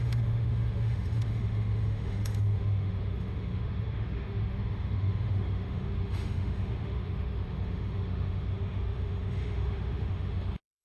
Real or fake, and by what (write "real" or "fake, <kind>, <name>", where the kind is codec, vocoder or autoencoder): fake, autoencoder, DAC-VAE